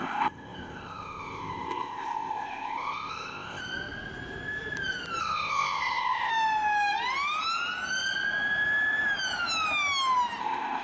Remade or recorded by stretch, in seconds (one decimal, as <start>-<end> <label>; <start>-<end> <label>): 0.0-3.6 remade; 3.6-5.2 recorded; 5.2-6.3 remade; 6.3-10.4 recorded; 10.4-10.8 remade

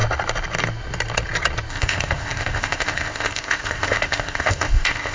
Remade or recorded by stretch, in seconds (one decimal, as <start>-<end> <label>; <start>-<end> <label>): 0.0-1.7 recorded; 1.7-5.1 remade

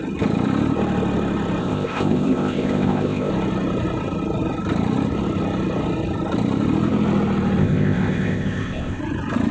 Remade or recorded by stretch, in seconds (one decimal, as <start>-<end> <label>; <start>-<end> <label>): 0.0-1.6 recorded; 1.6-3.3 remade; 3.3-7.6 recorded; 7.6-9.0 remade; 9.0-9.5 recorded

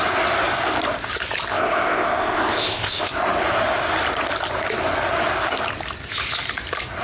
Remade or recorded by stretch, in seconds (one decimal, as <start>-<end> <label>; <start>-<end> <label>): 0.0-1.5 recorded; 1.5-3.1 remade; 3.1-7.0 recorded

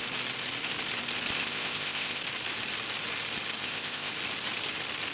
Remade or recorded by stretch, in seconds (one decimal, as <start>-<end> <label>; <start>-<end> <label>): 0.0-1.4 recorded; 1.4-2.2 remade; 2.2-3.6 recorded; 3.6-4.1 remade; 4.1-5.1 recorded

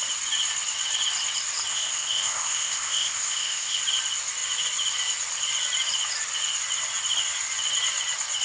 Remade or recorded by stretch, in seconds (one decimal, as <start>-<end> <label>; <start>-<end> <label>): 0.0-1.7 recorded; 1.7-3.8 remade; 3.8-8.4 recorded